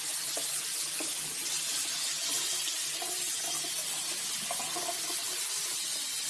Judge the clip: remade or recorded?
recorded